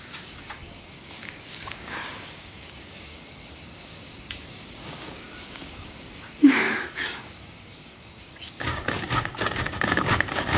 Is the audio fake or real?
fake